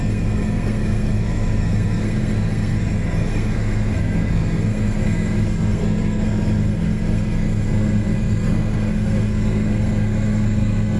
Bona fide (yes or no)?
no